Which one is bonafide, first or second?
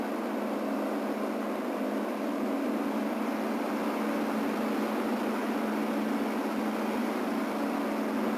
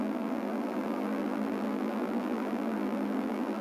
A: first